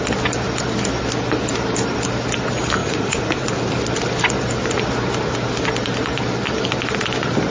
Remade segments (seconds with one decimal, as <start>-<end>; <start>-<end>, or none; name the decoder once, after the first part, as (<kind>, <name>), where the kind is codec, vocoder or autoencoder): 2.8-3.5 (vocoder, Vocos)